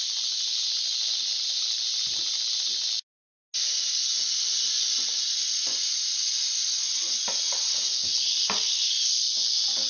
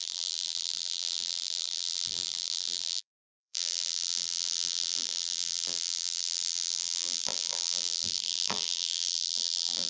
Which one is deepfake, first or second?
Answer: second